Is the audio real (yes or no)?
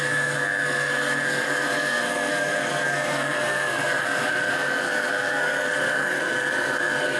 no